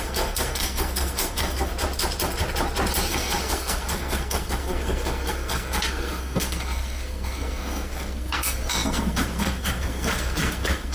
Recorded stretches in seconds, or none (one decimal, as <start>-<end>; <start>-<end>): 1.7-3.1